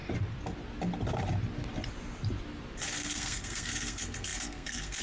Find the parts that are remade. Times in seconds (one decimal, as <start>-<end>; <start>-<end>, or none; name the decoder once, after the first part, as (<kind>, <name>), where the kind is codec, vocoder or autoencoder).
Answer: 3.0-5.0 (codec, SNAC)